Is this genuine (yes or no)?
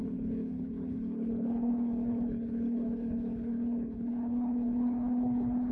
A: no